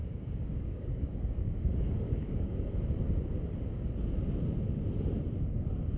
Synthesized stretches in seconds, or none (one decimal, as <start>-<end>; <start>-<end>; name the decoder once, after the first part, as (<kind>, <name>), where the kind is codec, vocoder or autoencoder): 0.0-2.7 (codec, DAC)